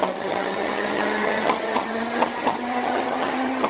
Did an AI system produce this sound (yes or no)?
yes